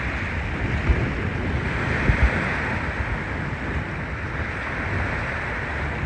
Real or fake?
real